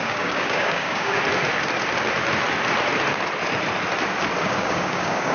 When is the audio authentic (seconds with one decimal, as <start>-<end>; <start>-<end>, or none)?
1.2-4.4